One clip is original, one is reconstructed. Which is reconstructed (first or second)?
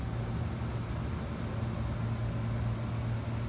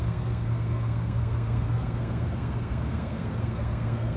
second